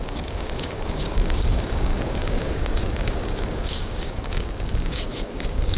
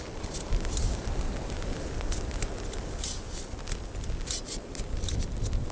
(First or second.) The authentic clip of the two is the second